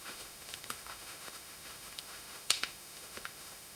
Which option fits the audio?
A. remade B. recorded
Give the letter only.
A